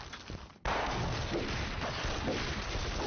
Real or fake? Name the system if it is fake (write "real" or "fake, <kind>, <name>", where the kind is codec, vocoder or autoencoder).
real